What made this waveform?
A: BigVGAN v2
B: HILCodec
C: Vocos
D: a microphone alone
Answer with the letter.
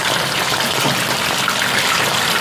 D